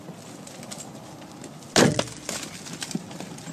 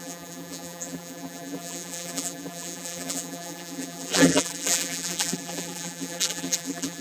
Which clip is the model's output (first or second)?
second